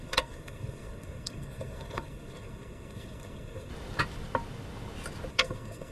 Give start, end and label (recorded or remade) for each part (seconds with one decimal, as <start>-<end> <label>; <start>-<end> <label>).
0.0-3.7 remade; 3.7-5.3 recorded; 5.3-5.9 remade